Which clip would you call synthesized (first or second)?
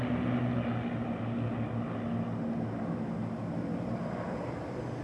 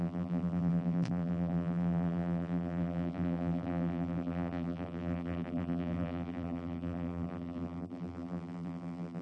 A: second